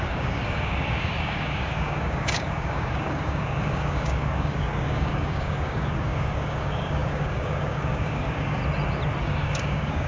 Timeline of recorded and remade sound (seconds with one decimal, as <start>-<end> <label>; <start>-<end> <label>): 0.0-8.6 remade; 8.6-9.2 recorded; 9.2-10.1 remade